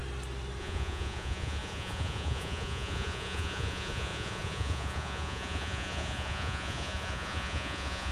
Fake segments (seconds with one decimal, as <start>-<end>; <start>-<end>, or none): 0.6-8.1